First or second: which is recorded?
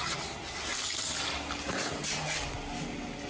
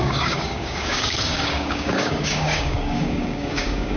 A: first